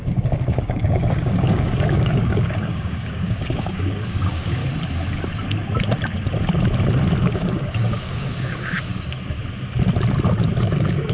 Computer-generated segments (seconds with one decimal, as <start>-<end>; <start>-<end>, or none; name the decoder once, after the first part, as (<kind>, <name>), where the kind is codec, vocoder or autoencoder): 0.0-4.6 (codec, DAC); 7.2-8.9; 10.6-11.1